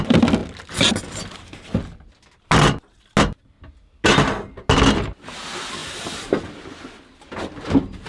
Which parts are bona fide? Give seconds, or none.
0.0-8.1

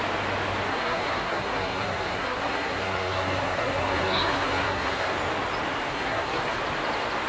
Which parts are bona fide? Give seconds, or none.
0.0-0.7; 5.1-5.9; 6.6-7.3

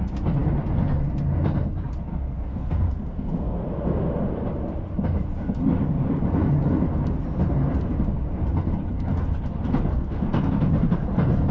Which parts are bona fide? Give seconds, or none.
0.0-2.1; 3.6-9.9; 10.5-11.5